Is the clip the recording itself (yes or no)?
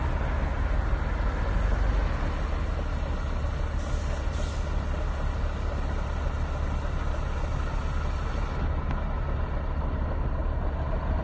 yes